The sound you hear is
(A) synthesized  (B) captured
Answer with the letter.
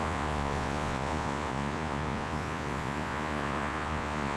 A